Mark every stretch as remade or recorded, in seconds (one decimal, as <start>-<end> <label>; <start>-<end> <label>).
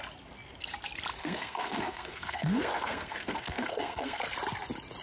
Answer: 0.0-1.2 recorded; 1.2-4.2 remade; 4.2-5.0 recorded